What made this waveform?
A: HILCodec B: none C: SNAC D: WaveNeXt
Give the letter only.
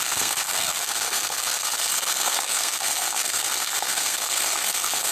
C